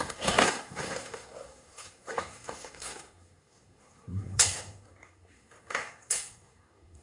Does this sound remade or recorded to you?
remade